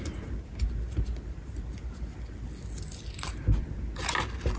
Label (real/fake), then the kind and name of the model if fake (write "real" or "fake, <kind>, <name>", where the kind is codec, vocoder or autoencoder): real